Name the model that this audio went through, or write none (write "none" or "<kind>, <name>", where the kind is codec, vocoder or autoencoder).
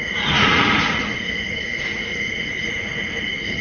vocoder, Vocos